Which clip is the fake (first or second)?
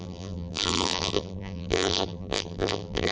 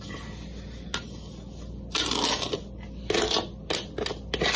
first